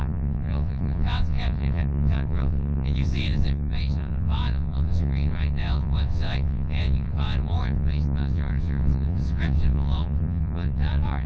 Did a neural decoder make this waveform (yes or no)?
yes